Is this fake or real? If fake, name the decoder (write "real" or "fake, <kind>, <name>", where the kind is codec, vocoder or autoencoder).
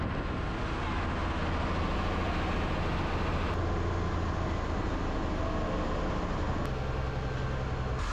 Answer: real